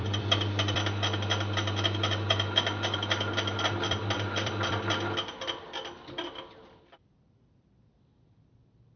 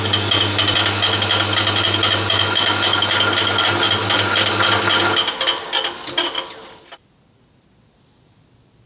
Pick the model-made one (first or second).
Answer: first